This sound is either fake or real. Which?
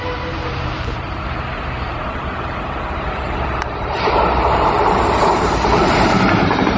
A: fake